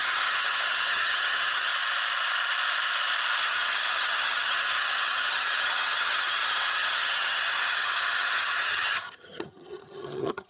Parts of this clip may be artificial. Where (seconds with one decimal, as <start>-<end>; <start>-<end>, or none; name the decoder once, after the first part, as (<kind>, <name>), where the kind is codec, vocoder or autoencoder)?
0.0-1.7 (vocoder, HiFi-GAN); 3.4-10.5